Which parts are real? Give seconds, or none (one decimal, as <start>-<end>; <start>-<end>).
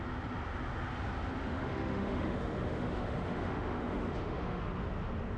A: 0.0-1.4; 4.6-5.4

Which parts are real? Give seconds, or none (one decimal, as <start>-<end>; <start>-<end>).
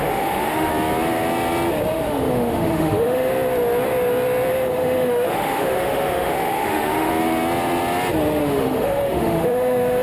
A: 0.7-1.9; 3.3-4.5; 7.1-8.4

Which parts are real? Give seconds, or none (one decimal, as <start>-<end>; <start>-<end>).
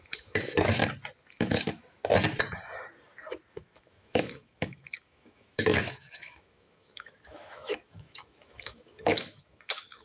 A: 0.8-1.3; 2.0-3.5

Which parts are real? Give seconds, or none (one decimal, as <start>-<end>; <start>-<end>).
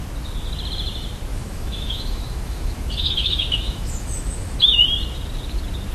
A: 0.0-1.3; 4.8-5.9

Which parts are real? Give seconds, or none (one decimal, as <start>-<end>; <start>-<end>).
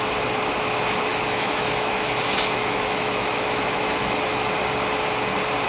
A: 0.0-1.1; 4.5-5.7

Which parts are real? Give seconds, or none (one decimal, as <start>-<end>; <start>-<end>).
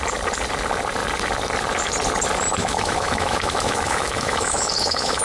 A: 0.0-2.6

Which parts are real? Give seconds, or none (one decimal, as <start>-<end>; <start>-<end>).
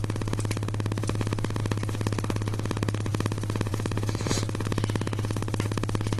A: 0.0-3.7; 4.3-6.2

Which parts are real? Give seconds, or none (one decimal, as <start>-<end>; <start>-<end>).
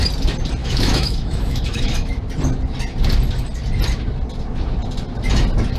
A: 0.0-0.6; 2.2-5.8